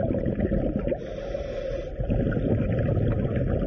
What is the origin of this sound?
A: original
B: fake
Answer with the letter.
A